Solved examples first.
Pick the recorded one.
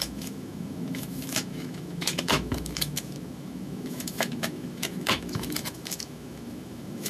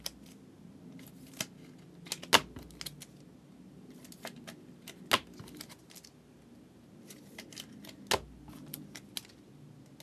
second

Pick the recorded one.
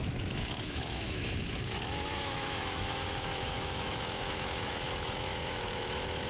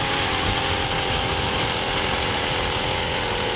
second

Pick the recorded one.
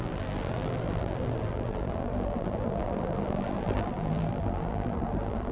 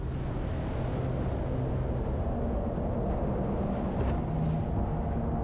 second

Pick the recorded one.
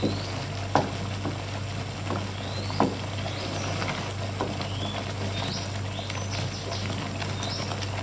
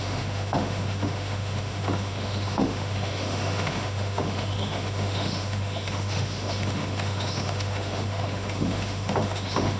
first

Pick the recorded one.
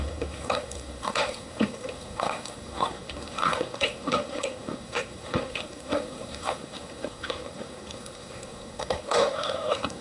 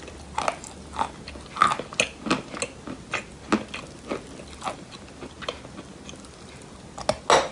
second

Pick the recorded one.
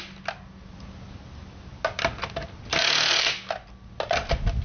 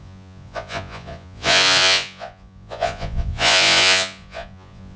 first